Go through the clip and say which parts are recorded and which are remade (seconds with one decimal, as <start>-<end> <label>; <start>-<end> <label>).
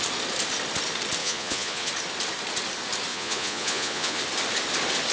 0.0-1.2 recorded; 1.2-1.9 remade; 1.9-3.1 recorded; 3.1-4.2 remade; 4.2-5.1 recorded